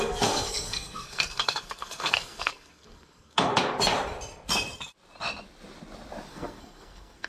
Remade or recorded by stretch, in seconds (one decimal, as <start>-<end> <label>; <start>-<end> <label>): 0.0-3.5 remade; 3.5-6.3 recorded; 6.3-7.3 remade